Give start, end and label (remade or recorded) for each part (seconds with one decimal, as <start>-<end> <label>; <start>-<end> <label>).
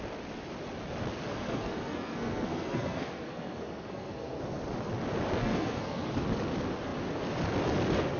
0.0-1.3 recorded; 1.3-4.4 remade; 4.4-5.4 recorded; 5.4-6.1 remade; 6.1-8.2 recorded